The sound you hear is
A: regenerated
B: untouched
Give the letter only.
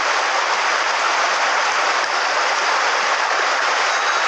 B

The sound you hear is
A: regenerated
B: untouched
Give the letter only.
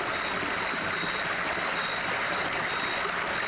B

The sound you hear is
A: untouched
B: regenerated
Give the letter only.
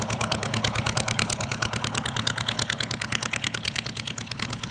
B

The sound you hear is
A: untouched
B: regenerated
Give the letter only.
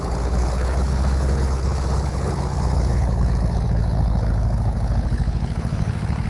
B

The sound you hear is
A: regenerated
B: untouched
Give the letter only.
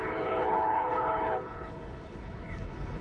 A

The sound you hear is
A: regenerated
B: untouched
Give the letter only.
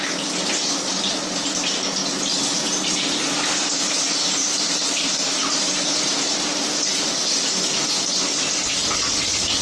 B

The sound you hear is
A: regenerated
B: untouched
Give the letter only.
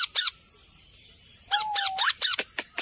B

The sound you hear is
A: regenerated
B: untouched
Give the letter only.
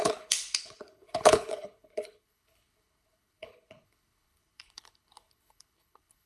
A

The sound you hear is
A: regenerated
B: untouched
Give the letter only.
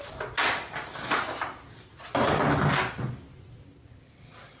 B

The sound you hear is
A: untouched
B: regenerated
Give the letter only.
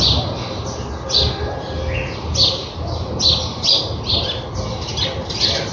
A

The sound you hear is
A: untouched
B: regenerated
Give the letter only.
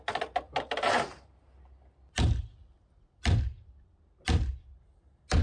A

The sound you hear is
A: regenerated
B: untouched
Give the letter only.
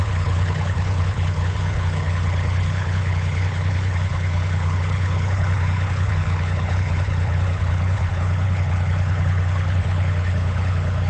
A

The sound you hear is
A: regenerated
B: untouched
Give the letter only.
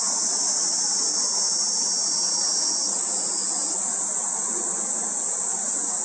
B